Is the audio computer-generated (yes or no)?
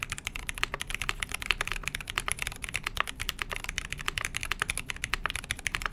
no